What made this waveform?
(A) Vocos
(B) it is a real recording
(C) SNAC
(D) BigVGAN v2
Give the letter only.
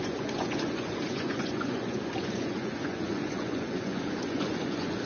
A